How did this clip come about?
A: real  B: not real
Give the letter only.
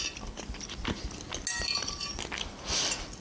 A